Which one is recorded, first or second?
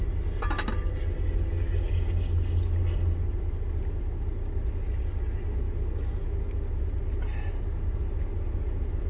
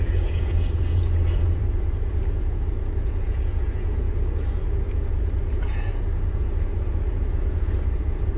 first